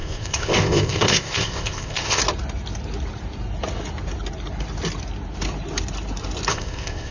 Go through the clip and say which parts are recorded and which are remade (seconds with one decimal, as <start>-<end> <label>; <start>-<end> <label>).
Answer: 0.0-2.2 remade; 2.2-6.5 recorded; 6.5-7.1 remade

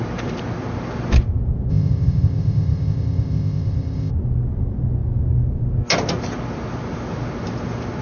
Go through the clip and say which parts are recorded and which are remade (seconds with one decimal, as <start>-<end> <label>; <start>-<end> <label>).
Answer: 0.0-1.7 recorded; 1.7-4.1 remade; 4.1-8.0 recorded

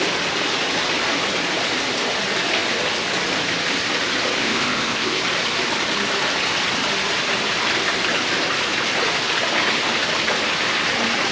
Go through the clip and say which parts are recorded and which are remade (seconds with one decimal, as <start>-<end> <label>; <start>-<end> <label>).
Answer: 0.0-4.4 recorded; 4.4-5.2 remade; 5.2-11.3 recorded

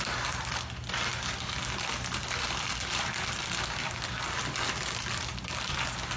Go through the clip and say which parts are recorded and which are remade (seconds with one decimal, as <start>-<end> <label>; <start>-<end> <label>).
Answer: 0.0-6.2 recorded

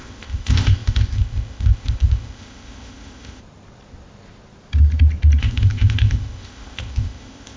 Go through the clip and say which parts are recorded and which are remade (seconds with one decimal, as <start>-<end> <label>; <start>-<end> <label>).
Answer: 0.0-3.4 remade; 3.4-5.4 recorded; 5.4-7.6 remade

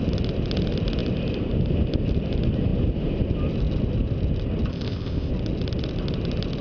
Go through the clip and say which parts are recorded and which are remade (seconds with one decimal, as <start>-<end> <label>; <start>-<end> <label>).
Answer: 0.0-4.7 recorded; 4.7-5.3 remade; 5.3-6.6 recorded

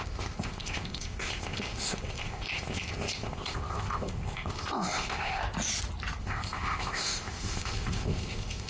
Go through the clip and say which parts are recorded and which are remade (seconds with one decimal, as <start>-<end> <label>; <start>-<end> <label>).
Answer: 0.0-5.4 remade; 5.4-6.2 recorded; 6.2-8.7 remade